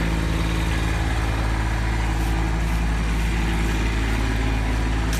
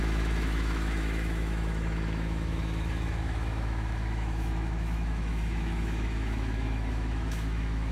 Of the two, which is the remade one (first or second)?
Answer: second